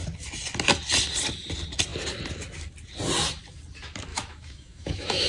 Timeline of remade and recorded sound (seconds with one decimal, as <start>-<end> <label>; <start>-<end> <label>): 0.0-4.1 recorded; 4.1-5.3 remade